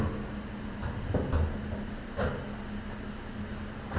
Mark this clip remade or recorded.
recorded